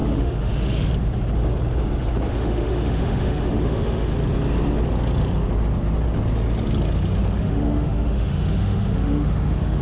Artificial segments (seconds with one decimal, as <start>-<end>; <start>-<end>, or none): 0.0-0.9; 2.3-4.1; 7.4-9.8